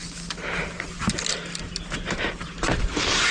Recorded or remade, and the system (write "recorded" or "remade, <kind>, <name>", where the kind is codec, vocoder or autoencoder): recorded